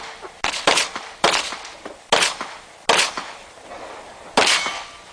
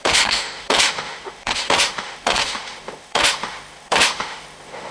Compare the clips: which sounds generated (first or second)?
second